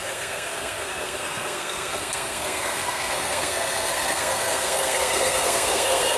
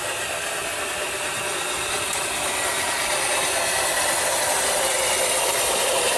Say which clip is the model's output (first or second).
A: first